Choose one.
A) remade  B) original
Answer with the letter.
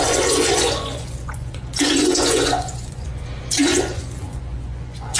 A